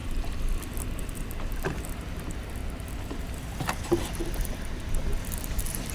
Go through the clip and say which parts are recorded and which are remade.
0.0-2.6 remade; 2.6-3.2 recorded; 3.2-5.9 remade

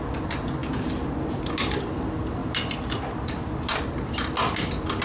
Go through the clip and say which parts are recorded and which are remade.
0.0-5.0 recorded

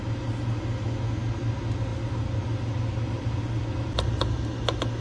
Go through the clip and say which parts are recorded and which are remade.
0.0-5.0 recorded

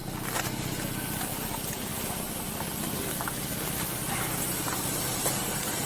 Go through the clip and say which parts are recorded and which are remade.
0.0-5.9 recorded

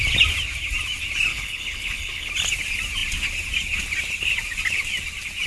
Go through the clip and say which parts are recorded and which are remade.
0.0-1.3 recorded; 1.3-2.3 remade; 2.3-5.5 recorded

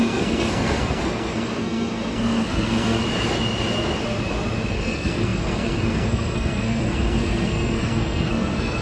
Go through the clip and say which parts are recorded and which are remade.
0.0-3.0 remade; 3.0-4.7 recorded; 4.7-8.8 remade